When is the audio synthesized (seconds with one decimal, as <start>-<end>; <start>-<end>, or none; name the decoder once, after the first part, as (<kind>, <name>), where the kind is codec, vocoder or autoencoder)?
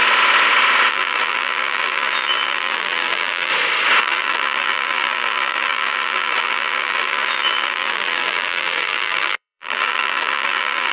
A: 0.9-3.5 (vocoder, BigVGAN v2); 4.0-10.9